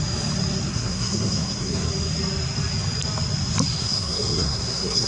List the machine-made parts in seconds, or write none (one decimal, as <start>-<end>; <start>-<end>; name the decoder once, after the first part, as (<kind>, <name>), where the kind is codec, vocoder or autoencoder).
0.7-1.9 (codec, SNAC); 3.8-5.1